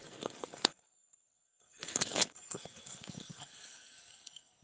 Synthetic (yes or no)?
yes